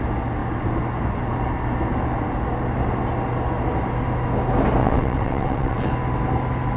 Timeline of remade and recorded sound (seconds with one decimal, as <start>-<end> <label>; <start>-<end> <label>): 0.0-4.8 recorded; 4.8-5.9 remade; 5.9-6.8 recorded